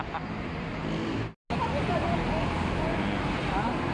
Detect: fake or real real